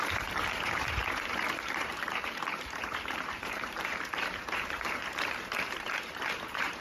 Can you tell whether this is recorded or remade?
remade